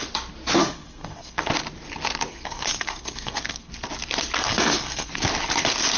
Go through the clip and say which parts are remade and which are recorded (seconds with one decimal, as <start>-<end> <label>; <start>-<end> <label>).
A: 0.0-0.6 recorded; 0.6-1.4 remade; 1.4-2.3 recorded; 2.3-3.7 remade; 3.7-4.4 recorded; 4.4-5.1 remade; 5.1-6.0 recorded